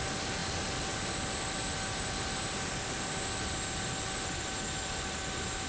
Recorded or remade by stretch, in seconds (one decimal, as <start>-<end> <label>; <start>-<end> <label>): 0.0-5.7 recorded